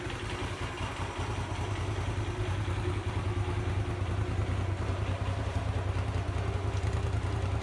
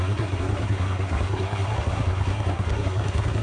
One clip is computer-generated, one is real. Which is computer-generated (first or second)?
second